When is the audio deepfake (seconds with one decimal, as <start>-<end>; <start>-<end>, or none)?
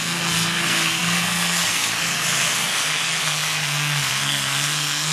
0.0-5.1